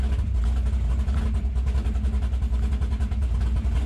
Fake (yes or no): no